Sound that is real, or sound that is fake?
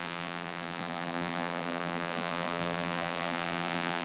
fake